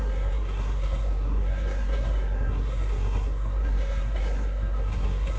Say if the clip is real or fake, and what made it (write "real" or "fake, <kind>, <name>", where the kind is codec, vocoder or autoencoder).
fake, codec, SNAC